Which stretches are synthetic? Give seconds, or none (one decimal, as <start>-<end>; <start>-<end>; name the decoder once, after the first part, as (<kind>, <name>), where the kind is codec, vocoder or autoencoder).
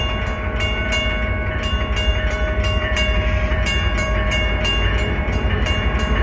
2.1-5.8 (vocoder, BigVGAN v2)